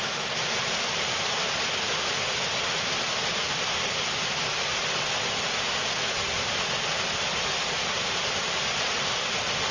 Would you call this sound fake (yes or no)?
no